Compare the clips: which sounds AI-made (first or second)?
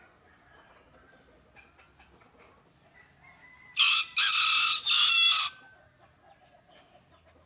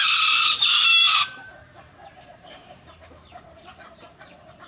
second